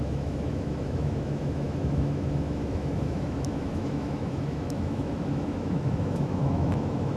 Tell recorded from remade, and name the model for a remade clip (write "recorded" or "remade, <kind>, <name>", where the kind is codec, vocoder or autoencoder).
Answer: remade, autoencoder, DAC-VAE